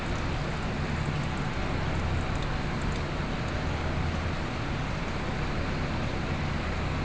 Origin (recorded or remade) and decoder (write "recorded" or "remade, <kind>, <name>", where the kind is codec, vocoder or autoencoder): recorded